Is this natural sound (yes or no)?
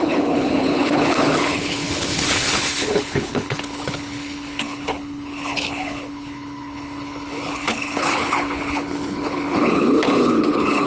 no